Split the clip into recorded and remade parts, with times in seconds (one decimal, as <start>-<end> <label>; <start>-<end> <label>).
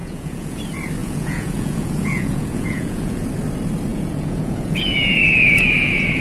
0.0-0.6 remade; 0.6-1.0 recorded; 1.0-3.3 remade; 3.3-3.9 recorded; 3.9-6.2 remade